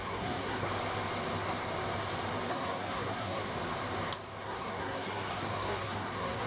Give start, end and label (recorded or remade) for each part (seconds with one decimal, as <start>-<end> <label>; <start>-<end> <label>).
0.0-0.7 remade; 0.7-2.5 recorded; 2.5-3.5 remade; 3.5-4.4 recorded; 4.4-6.5 remade